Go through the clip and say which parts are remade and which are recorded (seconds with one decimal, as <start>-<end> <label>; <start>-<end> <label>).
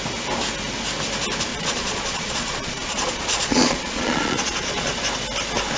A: 0.0-1.5 recorded; 1.5-5.0 remade; 5.0-5.8 recorded